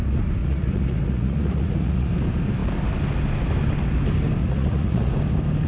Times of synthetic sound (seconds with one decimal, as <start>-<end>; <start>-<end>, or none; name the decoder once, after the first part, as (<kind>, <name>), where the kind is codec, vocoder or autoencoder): 0.4-2.1 (vocoder, Vocos); 4.4-5.1